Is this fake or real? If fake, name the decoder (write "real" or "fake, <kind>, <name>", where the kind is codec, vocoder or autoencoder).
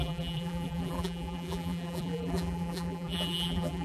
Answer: fake, vocoder, BigVGAN v2